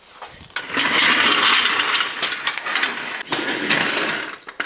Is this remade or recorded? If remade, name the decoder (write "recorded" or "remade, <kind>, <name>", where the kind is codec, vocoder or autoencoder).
recorded